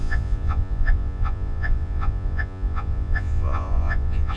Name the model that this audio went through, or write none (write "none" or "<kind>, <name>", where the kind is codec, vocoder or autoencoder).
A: vocoder, Vocos